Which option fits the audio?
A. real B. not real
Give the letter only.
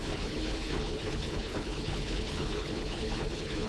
B